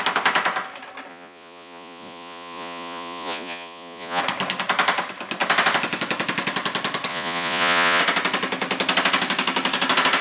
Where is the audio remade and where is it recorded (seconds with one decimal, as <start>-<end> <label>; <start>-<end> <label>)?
0.0-1.1 recorded; 1.1-4.2 remade; 4.2-7.1 recorded; 7.1-8.0 remade; 8.0-10.2 recorded